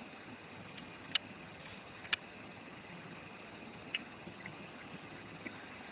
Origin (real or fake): fake